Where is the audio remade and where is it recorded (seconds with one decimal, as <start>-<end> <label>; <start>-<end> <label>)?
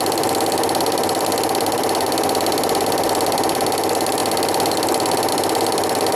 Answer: 0.0-6.2 recorded